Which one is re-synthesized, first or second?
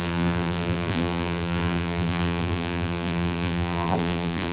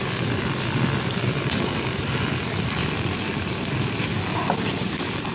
first